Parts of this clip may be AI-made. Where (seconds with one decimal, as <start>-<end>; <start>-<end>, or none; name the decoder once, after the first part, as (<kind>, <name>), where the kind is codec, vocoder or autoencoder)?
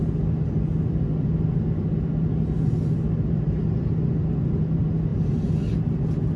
none